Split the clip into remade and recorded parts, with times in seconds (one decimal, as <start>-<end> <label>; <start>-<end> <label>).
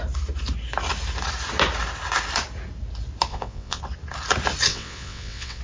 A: 0.0-3.3 recorded; 3.3-3.8 remade; 3.8-4.7 recorded; 4.7-5.6 remade